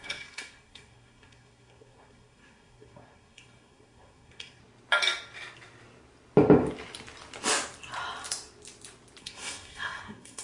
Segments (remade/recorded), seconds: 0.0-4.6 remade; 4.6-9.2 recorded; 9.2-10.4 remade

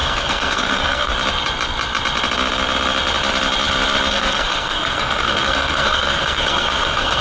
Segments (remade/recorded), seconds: 0.0-1.1 remade; 1.1-4.1 recorded; 4.1-7.2 remade

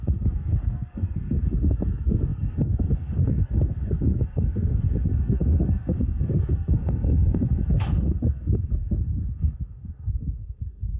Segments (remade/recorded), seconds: 0.0-11.0 remade